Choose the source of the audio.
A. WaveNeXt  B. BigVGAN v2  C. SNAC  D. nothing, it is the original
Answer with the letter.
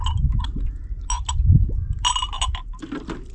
D